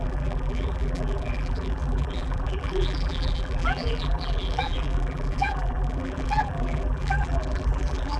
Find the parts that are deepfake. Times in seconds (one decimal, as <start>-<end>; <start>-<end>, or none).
0.0-8.2

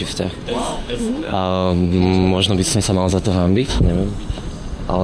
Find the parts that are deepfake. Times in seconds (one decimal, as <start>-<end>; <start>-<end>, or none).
0.6-2.0; 2.7-3.8